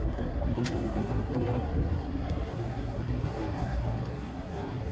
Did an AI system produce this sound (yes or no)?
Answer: yes